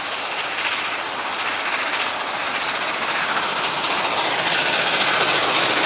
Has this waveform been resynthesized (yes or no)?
no